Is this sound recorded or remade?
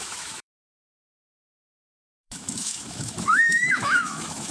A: remade